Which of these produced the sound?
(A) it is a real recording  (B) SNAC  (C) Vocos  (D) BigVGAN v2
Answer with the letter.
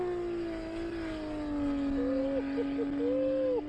A